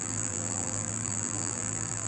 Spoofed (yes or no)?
yes